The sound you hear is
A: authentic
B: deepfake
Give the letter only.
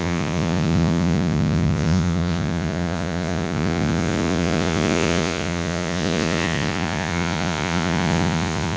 B